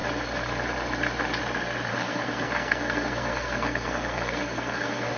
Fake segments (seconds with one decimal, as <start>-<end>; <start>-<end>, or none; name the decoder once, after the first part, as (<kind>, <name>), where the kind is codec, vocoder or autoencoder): 1.9-5.2 (codec, SNAC)

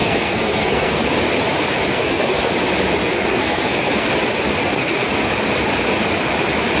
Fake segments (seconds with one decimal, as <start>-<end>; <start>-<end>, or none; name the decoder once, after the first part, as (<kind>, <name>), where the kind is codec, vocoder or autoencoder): 0.0-1.0 (codec, SNAC); 1.9-2.5; 3.0-4.1; 4.6-5.3

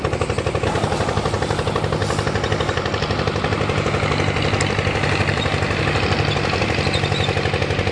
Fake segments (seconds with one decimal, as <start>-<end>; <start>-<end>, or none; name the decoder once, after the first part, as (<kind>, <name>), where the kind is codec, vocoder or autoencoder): none

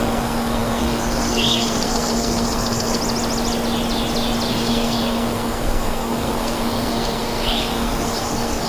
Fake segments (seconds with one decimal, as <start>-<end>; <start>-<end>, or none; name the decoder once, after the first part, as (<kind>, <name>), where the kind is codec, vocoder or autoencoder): 0.0-3.0 (codec, SNAC); 4.5-8.7

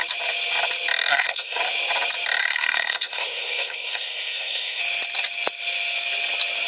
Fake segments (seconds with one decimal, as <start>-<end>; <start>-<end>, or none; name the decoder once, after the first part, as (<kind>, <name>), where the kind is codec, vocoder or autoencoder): 1.1-1.6 (codec, SNAC); 2.4-4.8

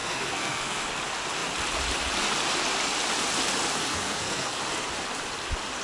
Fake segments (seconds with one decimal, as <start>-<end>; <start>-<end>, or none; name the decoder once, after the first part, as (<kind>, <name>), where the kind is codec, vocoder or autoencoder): 0.0-0.9 (codec, SNAC); 3.8-4.6

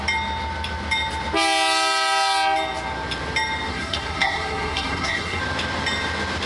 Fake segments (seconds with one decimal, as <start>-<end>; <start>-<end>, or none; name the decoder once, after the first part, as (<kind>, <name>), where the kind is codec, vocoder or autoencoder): 3.7-5.4 (codec, SNAC)

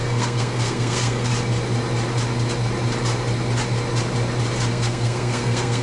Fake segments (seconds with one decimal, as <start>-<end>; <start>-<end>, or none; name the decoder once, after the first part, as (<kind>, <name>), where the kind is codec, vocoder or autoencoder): 0.0-1.3 (codec, SNAC); 4.7-5.8